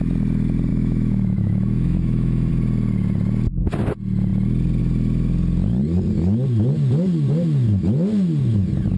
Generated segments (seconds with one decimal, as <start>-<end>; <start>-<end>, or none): 0.7-2.5